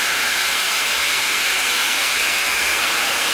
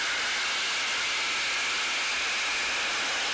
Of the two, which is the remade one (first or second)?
first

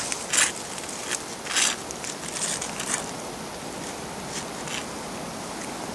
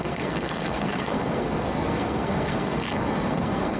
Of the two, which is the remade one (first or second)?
second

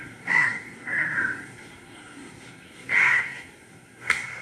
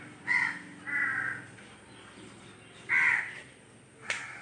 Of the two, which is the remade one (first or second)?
first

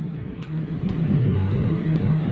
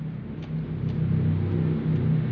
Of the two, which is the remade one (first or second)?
first